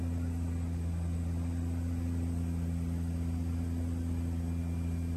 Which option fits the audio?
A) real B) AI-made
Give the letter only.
A